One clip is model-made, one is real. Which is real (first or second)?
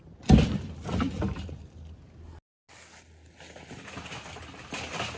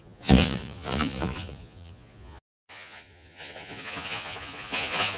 first